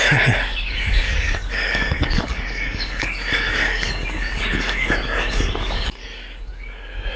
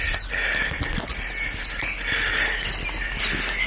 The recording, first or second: second